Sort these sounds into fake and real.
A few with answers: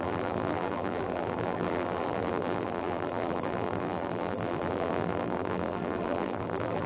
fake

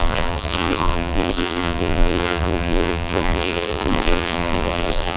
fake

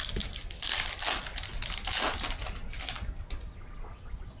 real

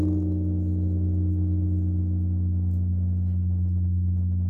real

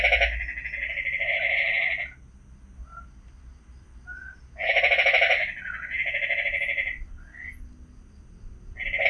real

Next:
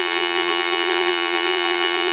fake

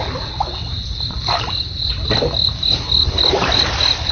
real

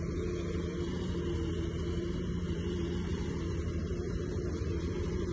fake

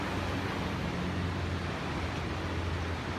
real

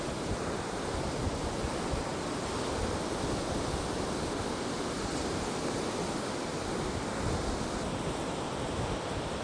fake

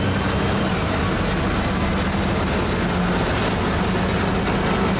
real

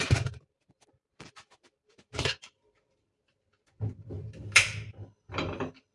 fake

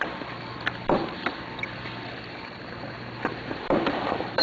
fake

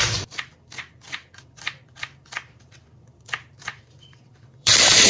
fake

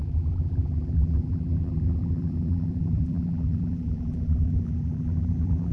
fake